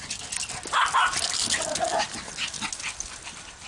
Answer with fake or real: real